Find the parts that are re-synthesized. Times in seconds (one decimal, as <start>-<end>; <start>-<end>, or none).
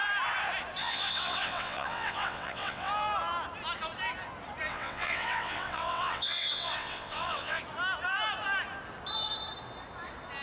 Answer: 0.8-2.9; 4.7-7.6